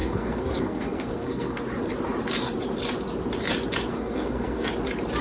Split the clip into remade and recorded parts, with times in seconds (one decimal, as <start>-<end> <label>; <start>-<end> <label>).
0.0-1.6 remade; 1.6-3.9 recorded; 3.9-4.7 remade; 4.7-5.2 recorded

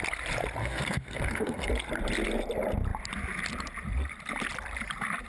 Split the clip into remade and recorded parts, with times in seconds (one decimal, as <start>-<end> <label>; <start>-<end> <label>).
0.0-0.6 recorded; 0.6-1.7 remade; 1.7-5.3 recorded

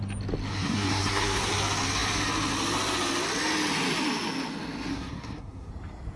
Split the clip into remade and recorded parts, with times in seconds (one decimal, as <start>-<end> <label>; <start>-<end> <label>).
0.0-0.5 recorded; 0.5-1.5 remade; 1.5-4.9 recorded; 4.9-5.7 remade; 5.7-6.2 recorded

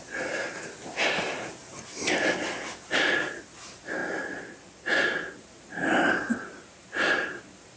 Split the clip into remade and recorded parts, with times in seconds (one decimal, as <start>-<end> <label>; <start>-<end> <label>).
0.0-7.8 recorded

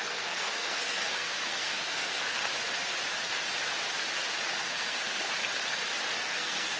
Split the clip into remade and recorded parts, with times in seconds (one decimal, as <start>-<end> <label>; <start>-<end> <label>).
0.0-2.5 remade; 2.5-4.6 recorded; 4.6-5.3 remade; 5.3-6.2 recorded; 6.2-6.8 remade